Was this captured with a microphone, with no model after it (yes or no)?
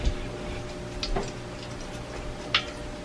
yes